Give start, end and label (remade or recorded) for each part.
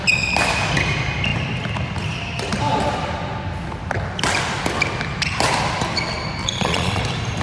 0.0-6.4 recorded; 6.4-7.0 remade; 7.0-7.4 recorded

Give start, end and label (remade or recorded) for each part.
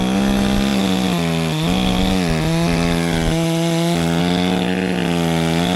0.0-5.8 recorded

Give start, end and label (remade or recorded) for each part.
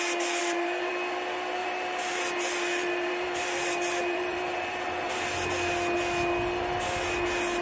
0.0-0.4 recorded; 0.4-0.9 remade; 0.9-1.6 recorded; 1.6-5.5 remade; 5.5-7.6 recorded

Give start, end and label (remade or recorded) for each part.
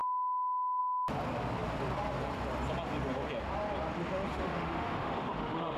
0.0-0.8 remade; 0.8-4.3 recorded; 4.3-5.8 remade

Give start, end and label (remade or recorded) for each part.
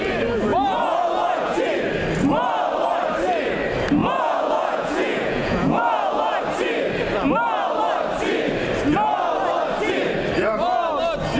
0.0-0.5 recorded; 0.5-1.6 remade; 1.6-4.0 recorded; 4.0-6.4 remade; 6.4-11.4 recorded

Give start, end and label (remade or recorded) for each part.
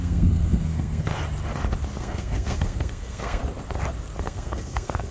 0.0-1.1 remade; 1.1-2.0 recorded; 2.0-3.4 remade; 3.4-4.2 recorded; 4.2-5.1 remade